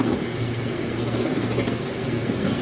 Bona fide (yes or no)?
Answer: no